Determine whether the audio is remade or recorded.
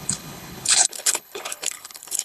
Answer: remade